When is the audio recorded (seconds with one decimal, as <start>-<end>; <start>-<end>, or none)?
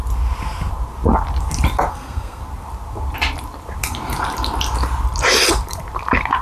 0.0-1.9; 2.4-6.4